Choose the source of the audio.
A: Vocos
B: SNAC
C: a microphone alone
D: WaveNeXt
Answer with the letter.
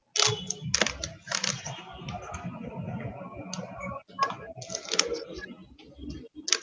C